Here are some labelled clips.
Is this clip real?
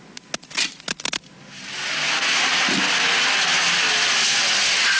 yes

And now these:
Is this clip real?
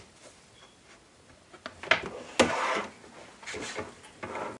yes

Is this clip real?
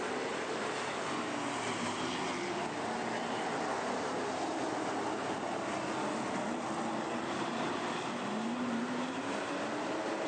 yes